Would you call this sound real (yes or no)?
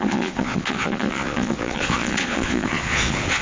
no